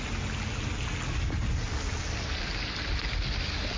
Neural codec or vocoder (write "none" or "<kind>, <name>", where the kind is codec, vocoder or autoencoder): none